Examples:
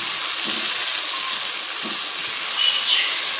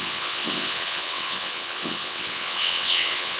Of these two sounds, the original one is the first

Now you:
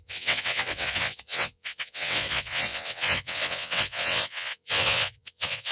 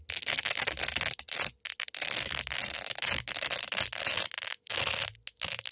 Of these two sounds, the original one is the second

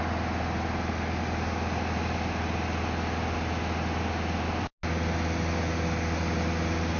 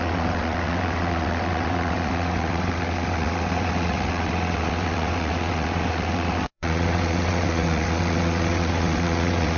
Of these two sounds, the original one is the first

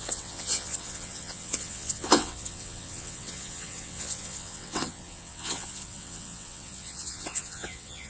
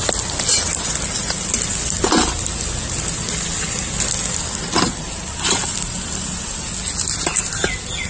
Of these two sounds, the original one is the second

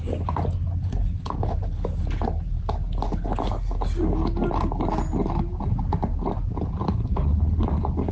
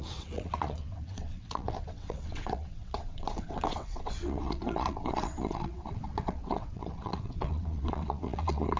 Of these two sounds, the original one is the first